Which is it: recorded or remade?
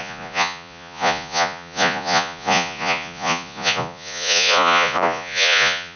remade